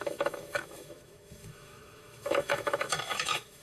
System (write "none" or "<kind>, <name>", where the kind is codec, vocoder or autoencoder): autoencoder, DAC-VAE